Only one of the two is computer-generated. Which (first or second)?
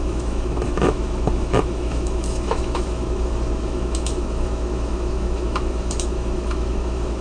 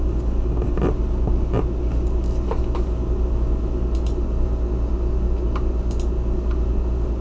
first